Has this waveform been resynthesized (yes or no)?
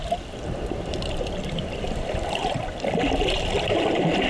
no